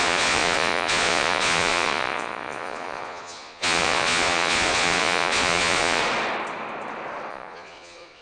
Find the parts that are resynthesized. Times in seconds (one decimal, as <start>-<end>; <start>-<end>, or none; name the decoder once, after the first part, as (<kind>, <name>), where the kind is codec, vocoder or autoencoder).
0.0-6.0 (vocoder, Vocos); 7.3-8.2